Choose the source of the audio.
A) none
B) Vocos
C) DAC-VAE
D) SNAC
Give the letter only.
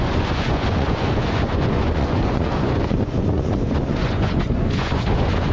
B